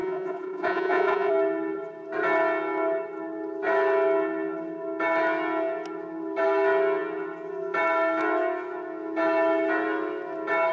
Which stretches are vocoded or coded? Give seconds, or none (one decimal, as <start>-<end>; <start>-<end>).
0.0-1.3